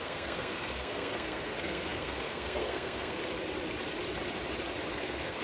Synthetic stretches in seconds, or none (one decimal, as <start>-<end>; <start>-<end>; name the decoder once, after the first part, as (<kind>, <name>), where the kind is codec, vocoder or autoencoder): 0.0-3.2 (codec, SNAC); 4.9-5.4